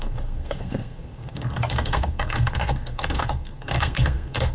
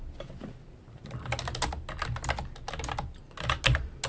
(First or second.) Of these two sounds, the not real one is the first